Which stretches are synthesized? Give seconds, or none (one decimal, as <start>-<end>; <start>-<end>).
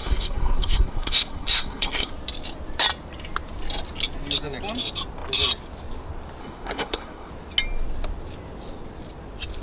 0.0-2.1; 6.4-7.3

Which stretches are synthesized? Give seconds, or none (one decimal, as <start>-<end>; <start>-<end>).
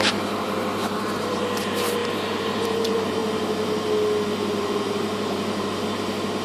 0.0-3.2; 4.6-6.4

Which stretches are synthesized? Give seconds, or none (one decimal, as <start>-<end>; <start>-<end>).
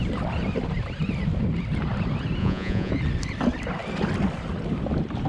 2.4-2.9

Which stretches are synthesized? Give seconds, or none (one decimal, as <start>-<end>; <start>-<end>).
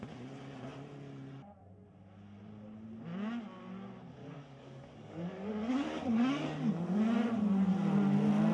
4.2-7.0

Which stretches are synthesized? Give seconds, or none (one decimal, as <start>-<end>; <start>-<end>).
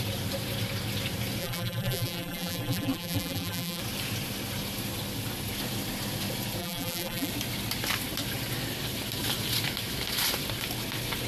1.4-3.8; 6.6-7.3